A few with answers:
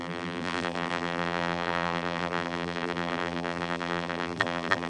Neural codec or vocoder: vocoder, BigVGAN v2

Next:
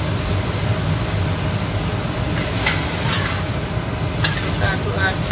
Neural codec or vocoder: none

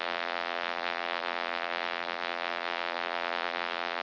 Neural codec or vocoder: vocoder, BigVGAN v2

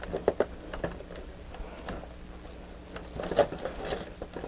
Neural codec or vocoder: none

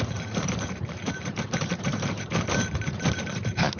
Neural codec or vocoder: vocoder, BigVGAN v2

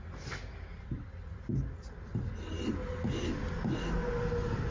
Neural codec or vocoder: none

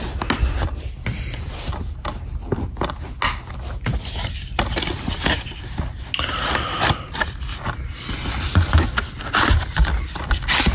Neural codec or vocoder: none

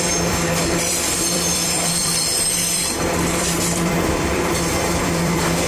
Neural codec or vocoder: vocoder, BigVGAN v2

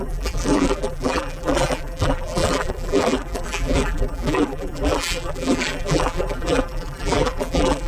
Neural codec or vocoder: vocoder, BigVGAN v2